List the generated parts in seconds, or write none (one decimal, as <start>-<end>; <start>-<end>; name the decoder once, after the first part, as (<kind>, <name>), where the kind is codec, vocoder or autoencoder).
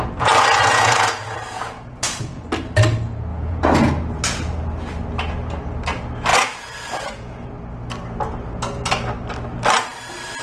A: 0.7-2.2 (vocoder, Vocos); 3.3-3.9; 6.3-7.5